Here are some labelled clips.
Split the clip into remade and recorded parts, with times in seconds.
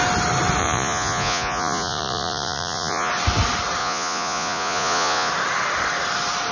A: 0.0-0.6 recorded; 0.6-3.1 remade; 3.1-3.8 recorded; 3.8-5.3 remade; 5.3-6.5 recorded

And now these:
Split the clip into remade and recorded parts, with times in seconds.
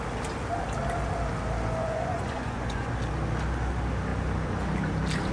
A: 0.0-1.8 recorded; 1.8-2.9 remade; 2.9-5.3 recorded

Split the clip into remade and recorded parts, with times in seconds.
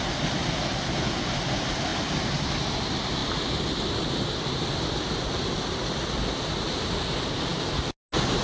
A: 0.0-8.4 recorded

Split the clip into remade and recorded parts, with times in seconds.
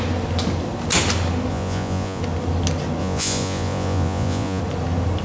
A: 0.0-1.5 recorded; 1.5-2.2 remade; 2.2-3.0 recorded; 3.0-4.6 remade; 4.6-5.2 recorded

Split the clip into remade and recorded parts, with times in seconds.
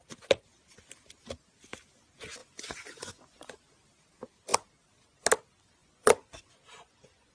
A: 0.0-2.4 recorded; 2.4-3.5 remade; 3.5-5.8 recorded; 5.8-7.3 remade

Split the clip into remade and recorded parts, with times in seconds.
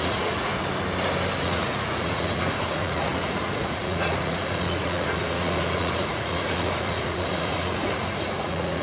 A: 0.0-0.5 remade; 0.5-1.4 recorded; 1.4-8.8 remade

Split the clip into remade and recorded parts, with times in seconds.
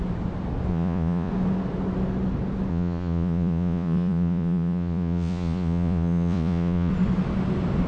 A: 0.0-0.7 recorded; 0.7-1.3 remade; 1.3-2.7 recorded; 2.7-6.9 remade; 6.9-7.9 recorded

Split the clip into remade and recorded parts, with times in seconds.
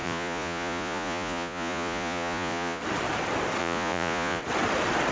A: 0.0-2.8 remade; 2.8-3.6 recorded; 3.6-4.4 remade; 4.4-5.1 recorded